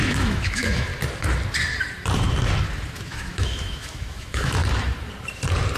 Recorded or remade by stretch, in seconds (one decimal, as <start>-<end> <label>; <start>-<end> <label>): 0.0-0.9 remade; 0.9-2.9 recorded; 2.9-4.6 remade; 4.6-5.8 recorded